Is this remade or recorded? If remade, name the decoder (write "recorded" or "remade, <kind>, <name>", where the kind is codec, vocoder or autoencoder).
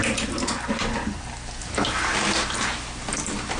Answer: recorded